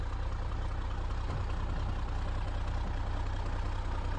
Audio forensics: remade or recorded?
recorded